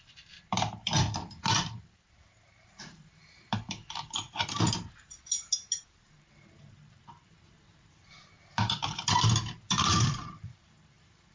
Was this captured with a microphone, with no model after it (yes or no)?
no